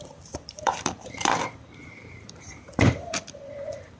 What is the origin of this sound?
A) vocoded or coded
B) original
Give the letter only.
A